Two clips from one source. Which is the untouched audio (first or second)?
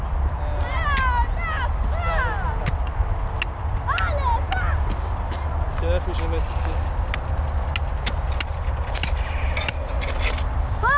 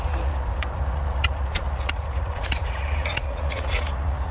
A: first